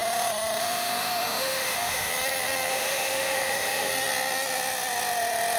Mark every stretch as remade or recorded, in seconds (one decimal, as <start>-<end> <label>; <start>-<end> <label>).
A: 0.0-0.6 recorded; 0.6-2.1 remade; 2.1-2.7 recorded; 2.7-3.9 remade; 3.9-5.6 recorded